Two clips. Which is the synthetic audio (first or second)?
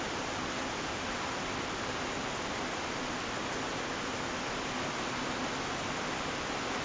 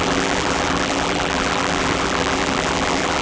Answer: second